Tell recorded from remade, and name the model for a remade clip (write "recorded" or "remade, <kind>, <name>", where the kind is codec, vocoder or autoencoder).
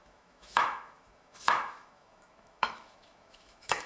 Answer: remade, autoencoder, DAC-VAE